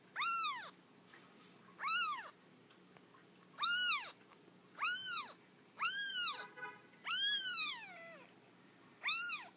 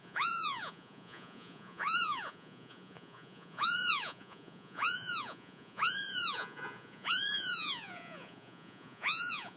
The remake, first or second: second